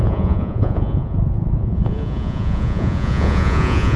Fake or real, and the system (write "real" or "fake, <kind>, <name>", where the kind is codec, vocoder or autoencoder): fake, vocoder, Vocos